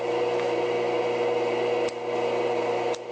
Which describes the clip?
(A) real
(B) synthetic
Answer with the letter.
A